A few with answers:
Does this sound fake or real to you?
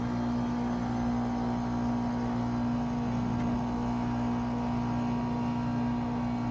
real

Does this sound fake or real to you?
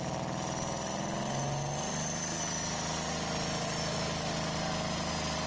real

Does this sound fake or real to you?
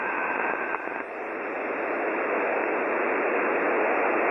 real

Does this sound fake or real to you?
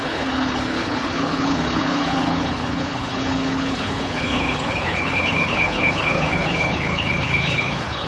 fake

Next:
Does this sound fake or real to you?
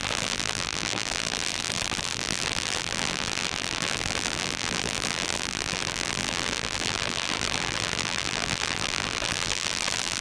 fake